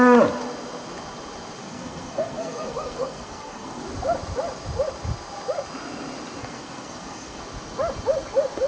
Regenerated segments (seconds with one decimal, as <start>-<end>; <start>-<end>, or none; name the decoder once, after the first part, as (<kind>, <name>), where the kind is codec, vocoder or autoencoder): 1.6-3.8 (codec, SNAC); 6.4-7.4